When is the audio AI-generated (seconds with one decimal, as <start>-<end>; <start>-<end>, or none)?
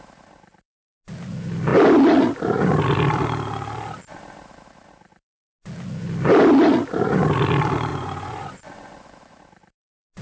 7.9-9.4